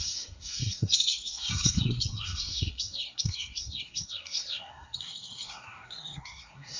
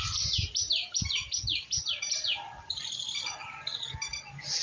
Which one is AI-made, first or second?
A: first